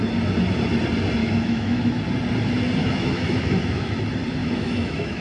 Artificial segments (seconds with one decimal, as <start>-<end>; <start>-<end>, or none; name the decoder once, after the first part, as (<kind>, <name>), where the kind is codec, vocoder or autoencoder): 1.2-1.9 (autoencoder, DAC-VAE); 2.8-4.0; 4.4-5.2